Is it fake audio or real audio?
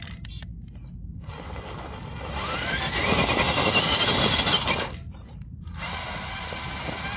real